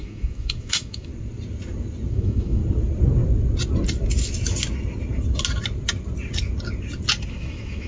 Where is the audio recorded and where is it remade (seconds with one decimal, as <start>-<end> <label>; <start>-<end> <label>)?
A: 0.0-1.1 remade; 1.1-2.1 recorded; 2.1-2.6 remade; 2.6-7.3 recorded; 7.3-7.9 remade